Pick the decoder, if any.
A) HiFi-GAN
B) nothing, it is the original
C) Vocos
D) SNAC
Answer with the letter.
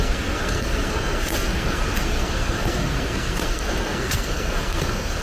D